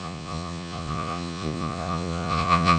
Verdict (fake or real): fake